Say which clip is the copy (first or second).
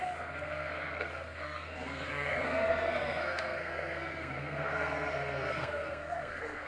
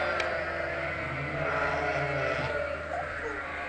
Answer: first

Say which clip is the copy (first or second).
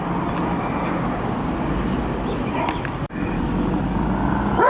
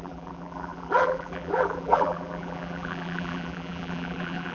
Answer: second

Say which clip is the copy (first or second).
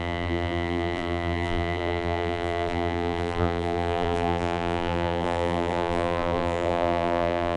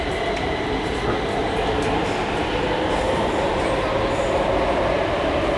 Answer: first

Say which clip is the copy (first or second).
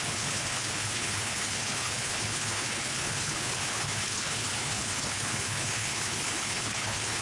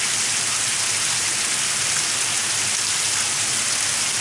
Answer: first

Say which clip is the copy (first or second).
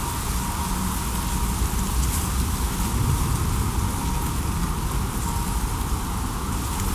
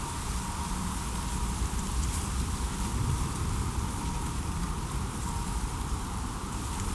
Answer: second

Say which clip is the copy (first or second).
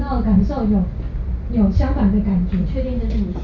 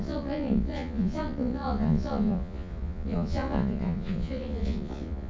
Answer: second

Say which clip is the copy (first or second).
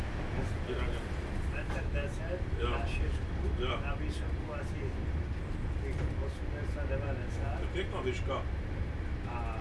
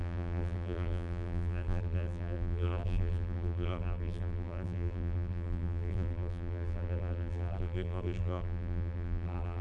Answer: second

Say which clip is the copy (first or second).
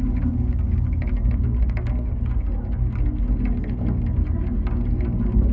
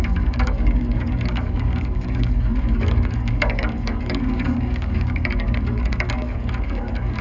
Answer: second